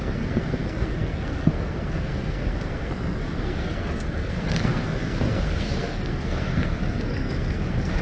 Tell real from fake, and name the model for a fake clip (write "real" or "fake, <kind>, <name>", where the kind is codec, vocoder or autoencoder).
fake, codec, SNAC